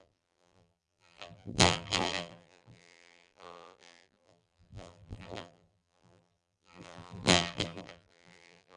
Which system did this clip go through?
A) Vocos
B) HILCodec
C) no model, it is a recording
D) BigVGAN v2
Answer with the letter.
D